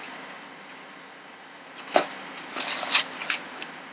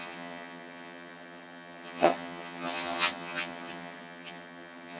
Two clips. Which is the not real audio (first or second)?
second